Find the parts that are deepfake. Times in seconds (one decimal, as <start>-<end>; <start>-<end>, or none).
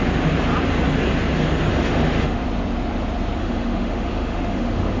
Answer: 1.7-2.4; 3.4-5.0